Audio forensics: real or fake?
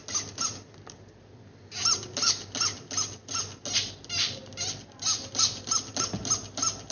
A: real